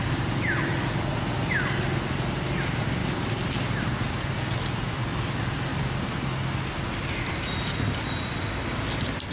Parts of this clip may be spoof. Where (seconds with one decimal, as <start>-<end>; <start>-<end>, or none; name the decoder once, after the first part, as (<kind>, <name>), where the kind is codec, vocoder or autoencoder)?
none